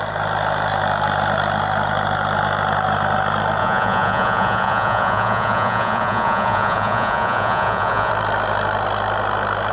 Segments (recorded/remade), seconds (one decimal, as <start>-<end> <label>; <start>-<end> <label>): 0.0-3.6 recorded; 3.6-8.1 remade; 8.1-9.7 recorded